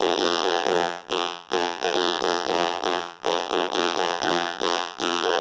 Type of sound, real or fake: fake